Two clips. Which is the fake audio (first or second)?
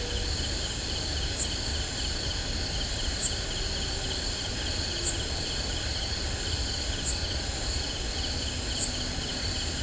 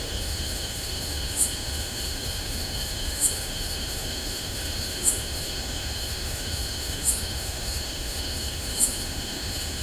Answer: second